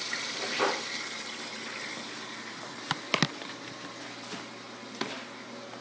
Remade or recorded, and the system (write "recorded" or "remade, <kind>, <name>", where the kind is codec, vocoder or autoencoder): recorded